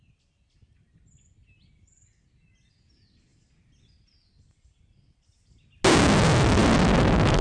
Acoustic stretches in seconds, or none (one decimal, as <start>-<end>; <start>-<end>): 0.0-7.4

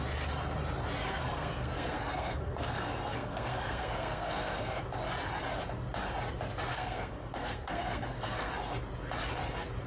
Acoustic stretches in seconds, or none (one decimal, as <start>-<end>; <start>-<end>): 0.0-1.0; 4.8-6.7; 8.5-9.9

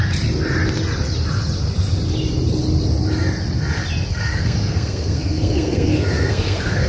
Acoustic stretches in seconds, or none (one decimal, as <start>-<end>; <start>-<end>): 0.0-4.1

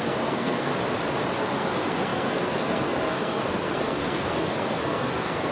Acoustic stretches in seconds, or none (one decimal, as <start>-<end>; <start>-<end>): 0.7-1.4

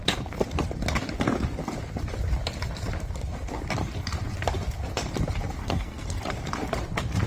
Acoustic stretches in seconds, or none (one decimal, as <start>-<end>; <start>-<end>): 0.0-5.6; 6.2-7.3

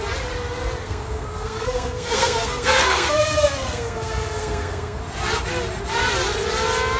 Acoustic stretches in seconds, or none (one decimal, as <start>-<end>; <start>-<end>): 0.0-0.8; 5.0-7.0